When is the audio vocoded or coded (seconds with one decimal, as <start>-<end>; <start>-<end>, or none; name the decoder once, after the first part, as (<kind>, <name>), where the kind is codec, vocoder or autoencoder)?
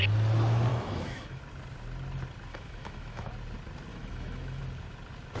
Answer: 0.7-1.4 (autoencoder, DAC-VAE); 2.5-3.3; 3.9-4.6